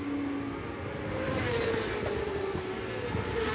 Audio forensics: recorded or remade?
recorded